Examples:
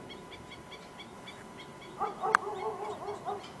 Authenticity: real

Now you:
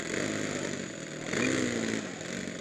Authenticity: real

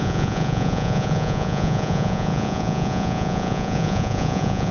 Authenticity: fake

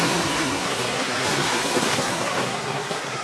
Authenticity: fake